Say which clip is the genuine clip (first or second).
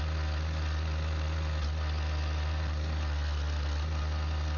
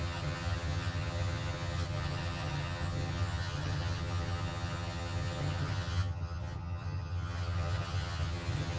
first